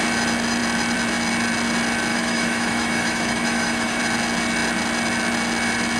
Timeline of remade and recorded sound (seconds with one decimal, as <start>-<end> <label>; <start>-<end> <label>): 0.0-2.1 recorded; 2.1-4.0 remade; 4.0-6.0 recorded